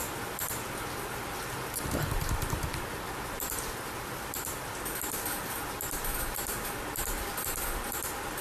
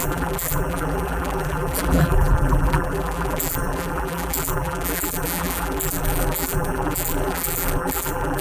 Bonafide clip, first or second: first